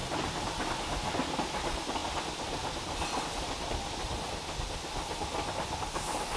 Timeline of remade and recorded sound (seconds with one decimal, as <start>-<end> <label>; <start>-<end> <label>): 0.0-6.4 recorded